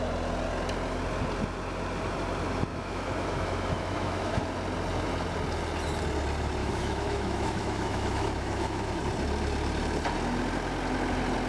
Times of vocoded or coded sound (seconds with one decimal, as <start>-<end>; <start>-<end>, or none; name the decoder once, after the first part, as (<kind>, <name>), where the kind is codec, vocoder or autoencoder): 2.7-4.3 (autoencoder, DAC-VAE); 6.6-8.9